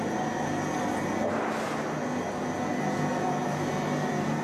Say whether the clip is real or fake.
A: real